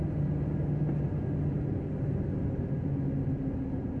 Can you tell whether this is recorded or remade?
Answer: recorded